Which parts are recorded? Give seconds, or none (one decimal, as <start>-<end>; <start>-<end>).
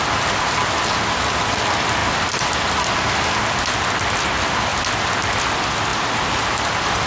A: 0.0-5.9